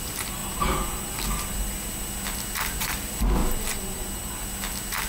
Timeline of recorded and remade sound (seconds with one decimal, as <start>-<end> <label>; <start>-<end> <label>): 0.0-0.4 remade; 0.4-2.8 recorded; 2.8-3.4 remade; 3.4-5.1 recorded